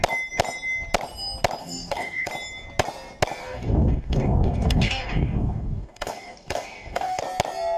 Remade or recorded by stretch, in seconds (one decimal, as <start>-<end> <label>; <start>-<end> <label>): 0.0-1.6 recorded; 1.6-2.3 remade; 2.3-3.4 recorded; 3.4-7.2 remade; 7.2-7.8 recorded